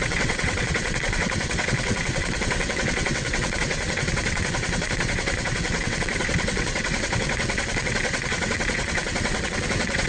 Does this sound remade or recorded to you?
remade